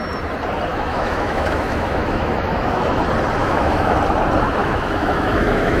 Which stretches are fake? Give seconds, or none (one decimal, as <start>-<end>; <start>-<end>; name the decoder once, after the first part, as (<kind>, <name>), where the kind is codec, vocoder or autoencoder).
0.7-3.0 (autoencoder, DAC-VAE); 3.4-4.0; 4.6-5.8